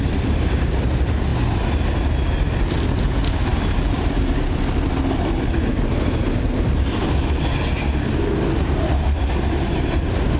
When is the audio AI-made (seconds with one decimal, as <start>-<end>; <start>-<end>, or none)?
none